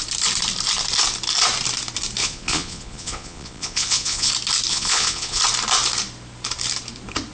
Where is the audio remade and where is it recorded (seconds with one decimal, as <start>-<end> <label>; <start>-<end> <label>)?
0.0-2.2 recorded; 2.2-4.3 remade; 4.3-4.7 recorded; 4.7-5.4 remade; 5.4-7.3 recorded